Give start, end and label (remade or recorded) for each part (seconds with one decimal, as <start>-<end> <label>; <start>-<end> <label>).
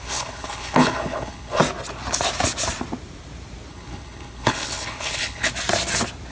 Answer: 0.0-1.6 remade; 1.6-3.7 recorded; 3.7-5.5 remade; 5.5-6.3 recorded